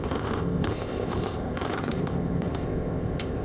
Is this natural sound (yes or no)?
no